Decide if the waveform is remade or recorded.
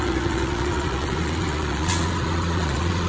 remade